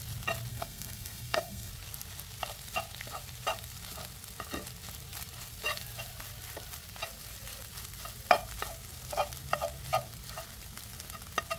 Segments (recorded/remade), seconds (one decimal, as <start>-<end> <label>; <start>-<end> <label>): 0.0-0.5 recorded; 0.5-1.7 remade; 1.7-11.6 recorded